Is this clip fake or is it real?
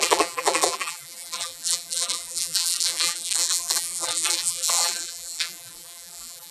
fake